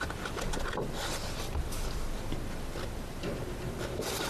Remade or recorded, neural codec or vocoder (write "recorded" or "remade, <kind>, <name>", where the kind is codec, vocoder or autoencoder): recorded